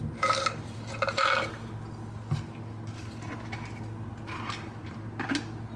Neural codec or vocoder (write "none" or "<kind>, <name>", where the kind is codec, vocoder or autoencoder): none